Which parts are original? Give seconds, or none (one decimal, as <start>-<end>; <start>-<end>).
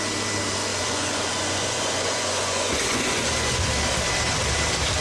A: 0.0-0.7; 3.7-5.0